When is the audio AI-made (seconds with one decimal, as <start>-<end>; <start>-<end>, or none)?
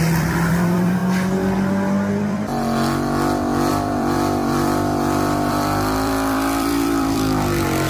0.0-1.0; 2.1-2.5; 3.7-7.9